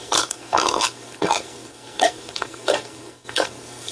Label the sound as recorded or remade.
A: remade